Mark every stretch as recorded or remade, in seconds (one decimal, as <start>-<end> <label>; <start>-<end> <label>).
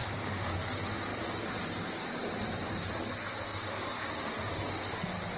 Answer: 0.0-0.7 remade; 0.7-1.1 recorded; 1.1-2.9 remade; 2.9-3.5 recorded; 3.5-4.2 remade; 4.2-5.4 recorded